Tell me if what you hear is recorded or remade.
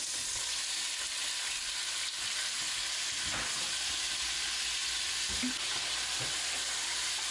recorded